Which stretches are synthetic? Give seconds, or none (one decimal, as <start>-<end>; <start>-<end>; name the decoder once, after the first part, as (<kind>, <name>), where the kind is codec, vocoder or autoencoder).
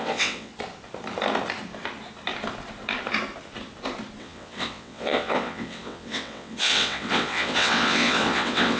0.0-0.5 (vocoder, WaveNeXt); 4.2-8.8